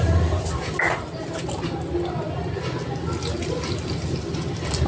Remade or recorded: recorded